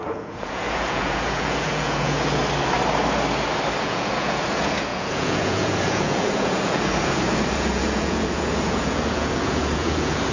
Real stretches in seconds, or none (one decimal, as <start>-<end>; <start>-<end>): 2.4-3.8

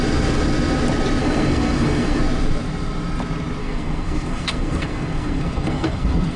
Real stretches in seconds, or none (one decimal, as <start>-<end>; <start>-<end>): 0.0-1.2; 2.2-3.6

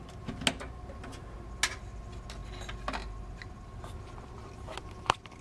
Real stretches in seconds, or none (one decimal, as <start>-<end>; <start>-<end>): 0.0-5.4

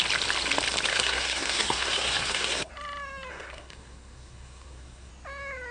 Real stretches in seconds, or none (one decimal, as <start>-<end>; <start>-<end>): 0.0-0.9; 2.7-3.3; 5.1-5.7

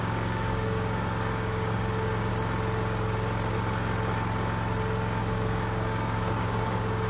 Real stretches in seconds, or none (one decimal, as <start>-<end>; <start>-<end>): 2.3-5.2

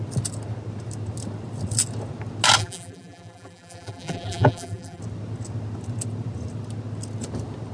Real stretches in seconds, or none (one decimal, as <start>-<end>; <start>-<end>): 0.0-2.6; 5.0-7.7

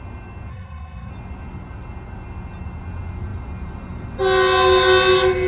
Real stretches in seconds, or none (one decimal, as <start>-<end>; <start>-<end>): 0.0-0.5; 1.1-5.5